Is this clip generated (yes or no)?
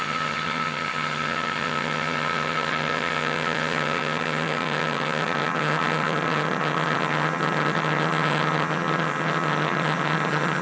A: yes